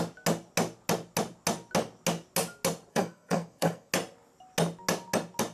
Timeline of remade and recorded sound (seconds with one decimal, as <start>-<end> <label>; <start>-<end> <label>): 0.0-2.9 recorded; 2.9-3.9 remade; 3.9-5.5 recorded